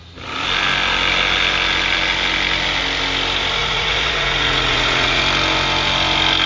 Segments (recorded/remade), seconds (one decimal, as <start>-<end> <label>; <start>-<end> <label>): 0.0-3.6 recorded; 3.6-5.2 remade; 5.2-6.5 recorded